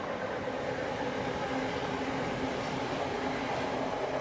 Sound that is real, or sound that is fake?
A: real